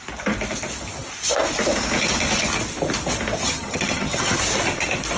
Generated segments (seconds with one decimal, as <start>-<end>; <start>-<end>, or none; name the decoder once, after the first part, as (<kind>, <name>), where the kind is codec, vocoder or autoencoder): 3.4-4.4 (vocoder, HiFi-GAN)